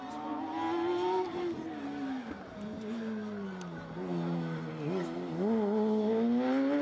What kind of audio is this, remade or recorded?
recorded